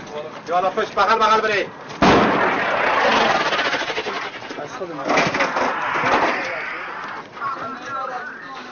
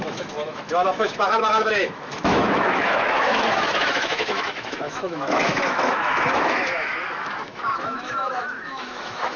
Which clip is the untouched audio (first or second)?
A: first